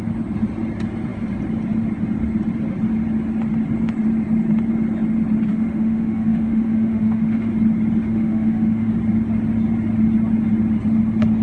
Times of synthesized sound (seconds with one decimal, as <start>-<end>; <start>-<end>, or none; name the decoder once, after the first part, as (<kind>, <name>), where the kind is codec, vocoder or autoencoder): 5.5-7.5 (autoencoder, DAC-VAE); 8.1-8.9